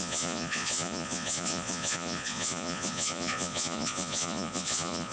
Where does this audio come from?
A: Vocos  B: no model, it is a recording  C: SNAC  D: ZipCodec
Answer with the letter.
A